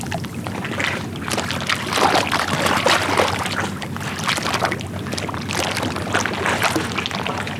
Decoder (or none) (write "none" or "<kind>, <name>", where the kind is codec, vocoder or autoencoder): none